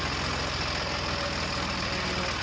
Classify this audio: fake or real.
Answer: real